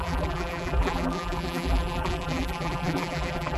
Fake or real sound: fake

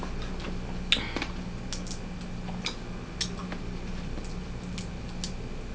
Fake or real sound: real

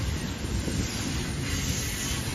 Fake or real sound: fake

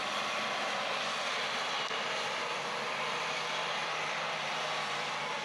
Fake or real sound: fake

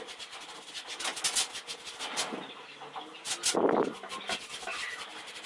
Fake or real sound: real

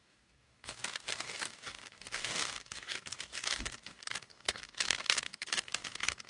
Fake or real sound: fake